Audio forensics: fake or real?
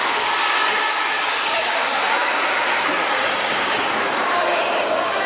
fake